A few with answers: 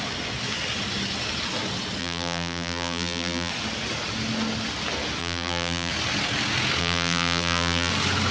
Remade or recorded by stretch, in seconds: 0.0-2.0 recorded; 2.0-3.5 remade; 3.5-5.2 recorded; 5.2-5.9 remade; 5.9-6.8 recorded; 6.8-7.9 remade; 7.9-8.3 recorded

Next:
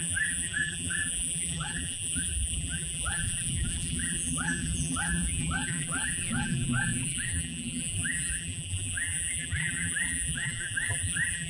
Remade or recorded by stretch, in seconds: 0.0-11.5 remade